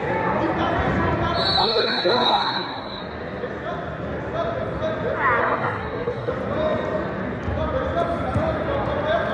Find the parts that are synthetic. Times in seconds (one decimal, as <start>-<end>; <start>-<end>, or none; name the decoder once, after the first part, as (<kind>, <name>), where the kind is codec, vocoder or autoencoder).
1.6-3.0 (codec, SNAC); 5.4-6.3